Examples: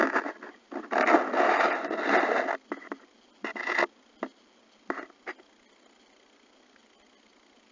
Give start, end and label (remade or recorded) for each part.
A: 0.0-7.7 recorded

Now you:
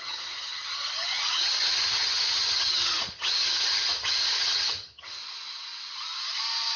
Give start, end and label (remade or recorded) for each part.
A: 0.0-5.2 remade; 5.2-6.8 recorded

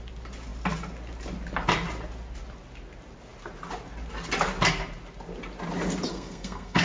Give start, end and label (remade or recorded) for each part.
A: 0.0-6.1 recorded; 6.1-6.8 remade

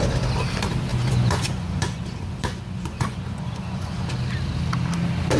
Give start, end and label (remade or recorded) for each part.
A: 0.0-0.9 recorded; 0.9-4.1 remade; 4.1-5.4 recorded